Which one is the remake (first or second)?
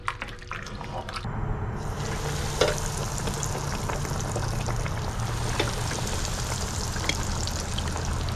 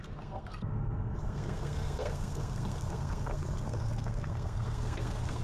second